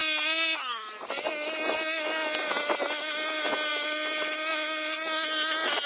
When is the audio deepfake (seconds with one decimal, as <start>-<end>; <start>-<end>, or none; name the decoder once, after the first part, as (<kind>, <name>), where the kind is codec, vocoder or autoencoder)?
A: none